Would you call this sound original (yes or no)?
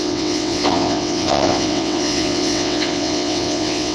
no